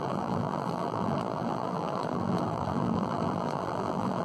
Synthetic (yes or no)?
yes